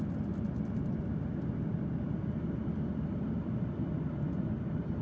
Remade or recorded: recorded